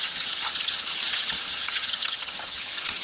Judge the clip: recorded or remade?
remade